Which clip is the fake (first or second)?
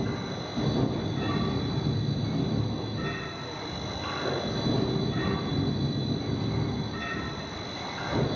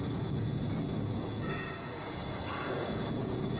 second